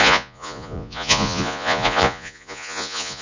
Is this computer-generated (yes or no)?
yes